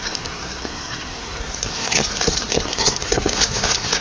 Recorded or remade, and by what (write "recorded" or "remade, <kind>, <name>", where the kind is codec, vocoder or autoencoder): remade, codec, SNAC